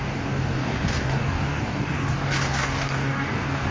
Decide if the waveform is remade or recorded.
remade